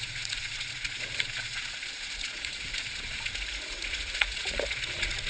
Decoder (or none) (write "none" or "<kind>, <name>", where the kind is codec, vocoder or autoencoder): vocoder, Vocos